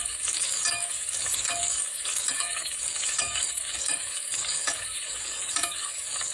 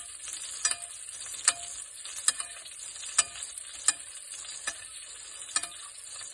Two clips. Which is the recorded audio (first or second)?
second